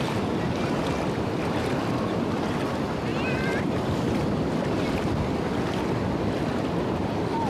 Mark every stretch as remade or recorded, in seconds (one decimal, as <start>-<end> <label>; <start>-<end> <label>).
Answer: 0.0-7.5 recorded